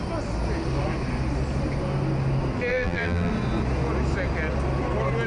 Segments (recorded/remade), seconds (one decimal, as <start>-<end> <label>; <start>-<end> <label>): 0.0-2.7 recorded; 2.7-3.3 remade; 3.3-5.3 recorded